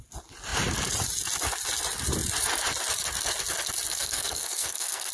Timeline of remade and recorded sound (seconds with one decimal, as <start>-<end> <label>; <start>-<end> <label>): 0.0-3.9 recorded; 3.9-5.1 remade